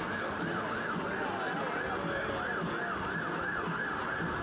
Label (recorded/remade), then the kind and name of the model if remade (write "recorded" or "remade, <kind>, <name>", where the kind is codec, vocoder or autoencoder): recorded